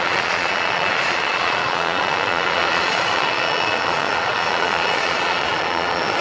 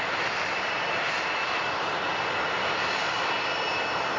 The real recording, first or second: second